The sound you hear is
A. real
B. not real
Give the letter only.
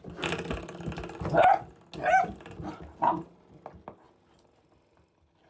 A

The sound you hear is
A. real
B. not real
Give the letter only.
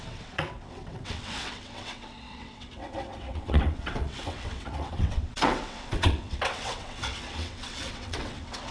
B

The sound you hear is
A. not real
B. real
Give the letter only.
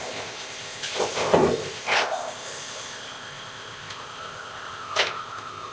A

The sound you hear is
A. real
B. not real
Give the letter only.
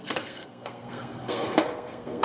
B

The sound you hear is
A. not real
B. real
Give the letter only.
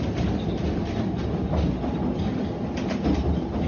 B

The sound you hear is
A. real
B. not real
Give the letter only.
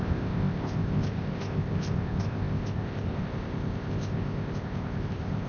B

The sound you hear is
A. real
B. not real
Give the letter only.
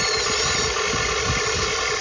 A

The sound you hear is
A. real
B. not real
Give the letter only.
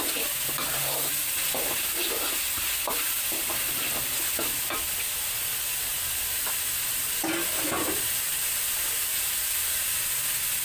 A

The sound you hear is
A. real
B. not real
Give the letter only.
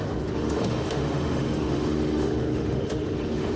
B